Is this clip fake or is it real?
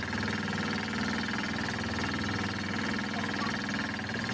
real